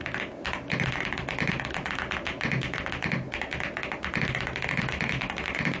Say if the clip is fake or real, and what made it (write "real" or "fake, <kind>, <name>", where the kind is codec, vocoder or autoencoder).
real